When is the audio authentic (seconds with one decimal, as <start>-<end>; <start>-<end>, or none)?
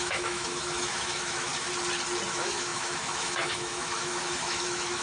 1.5-2.3